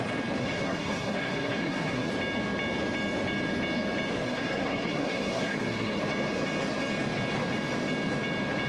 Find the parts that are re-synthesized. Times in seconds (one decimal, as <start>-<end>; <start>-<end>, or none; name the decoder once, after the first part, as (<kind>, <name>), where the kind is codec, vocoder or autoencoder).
0.4-2.1 (codec, SNAC); 4.1-6.0